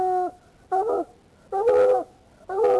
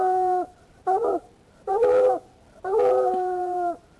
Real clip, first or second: first